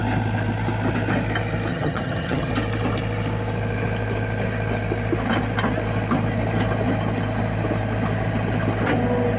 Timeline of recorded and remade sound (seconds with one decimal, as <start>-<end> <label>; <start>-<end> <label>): 0.0-1.7 recorded; 1.7-2.5 remade; 2.5-9.4 recorded